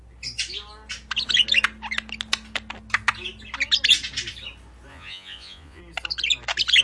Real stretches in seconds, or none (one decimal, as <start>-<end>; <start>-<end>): 0.0-4.9; 5.8-6.8